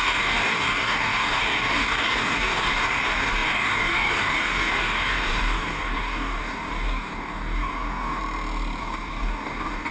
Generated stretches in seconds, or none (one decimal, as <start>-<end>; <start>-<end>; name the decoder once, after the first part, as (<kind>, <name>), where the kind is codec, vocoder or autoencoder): 0.0-8.2 (codec, DAC); 8.8-9.9